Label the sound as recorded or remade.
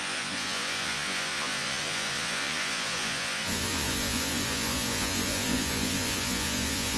remade